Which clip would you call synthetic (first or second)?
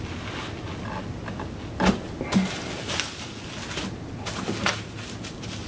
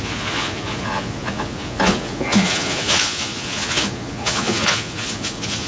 second